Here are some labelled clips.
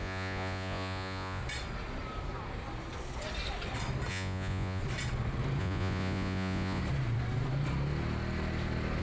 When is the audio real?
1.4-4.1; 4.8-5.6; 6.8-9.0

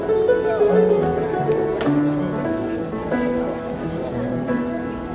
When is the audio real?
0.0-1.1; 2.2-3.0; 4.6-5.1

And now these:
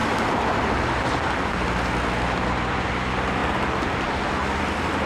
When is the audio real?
0.0-5.1

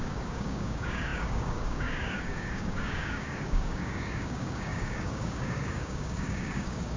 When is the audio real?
none